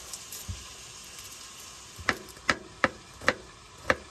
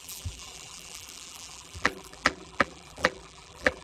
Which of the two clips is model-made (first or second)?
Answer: second